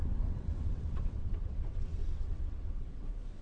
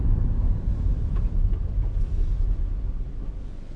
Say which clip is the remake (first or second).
first